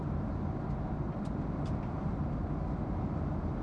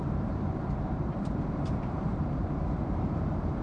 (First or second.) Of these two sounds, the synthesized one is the second